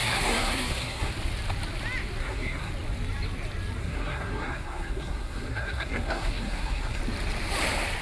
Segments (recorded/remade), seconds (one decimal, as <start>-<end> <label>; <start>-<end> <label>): 0.0-1.1 remade; 1.1-2.2 recorded; 2.2-2.7 remade; 2.7-3.8 recorded; 3.8-7.0 remade; 7.0-8.0 recorded